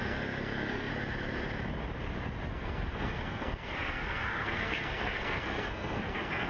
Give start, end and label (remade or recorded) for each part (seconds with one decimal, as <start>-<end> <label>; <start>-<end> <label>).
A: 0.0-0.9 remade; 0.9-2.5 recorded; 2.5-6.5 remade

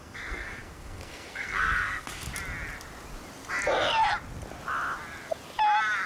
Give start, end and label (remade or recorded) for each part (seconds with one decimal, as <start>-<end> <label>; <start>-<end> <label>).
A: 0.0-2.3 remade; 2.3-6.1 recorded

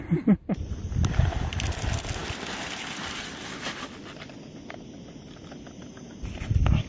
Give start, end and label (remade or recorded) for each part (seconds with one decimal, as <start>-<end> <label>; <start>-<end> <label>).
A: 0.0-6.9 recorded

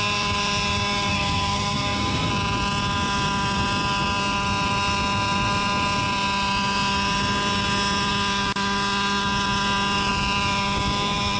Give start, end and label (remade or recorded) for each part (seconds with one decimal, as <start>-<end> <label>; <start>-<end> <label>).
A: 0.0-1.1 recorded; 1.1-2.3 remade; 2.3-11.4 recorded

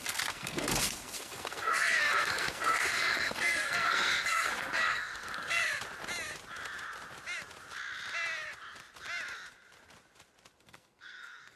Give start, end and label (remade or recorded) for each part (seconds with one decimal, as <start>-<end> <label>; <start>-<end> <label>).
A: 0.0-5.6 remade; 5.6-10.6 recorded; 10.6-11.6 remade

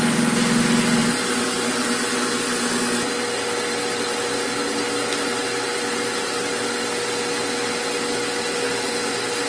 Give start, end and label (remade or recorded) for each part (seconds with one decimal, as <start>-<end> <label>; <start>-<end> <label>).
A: 0.0-9.5 recorded